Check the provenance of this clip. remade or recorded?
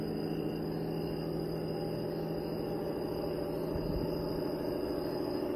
recorded